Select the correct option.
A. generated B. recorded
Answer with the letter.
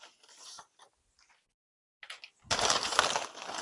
B